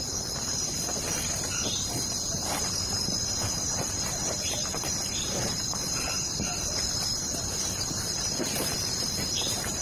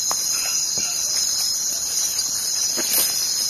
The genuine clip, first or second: second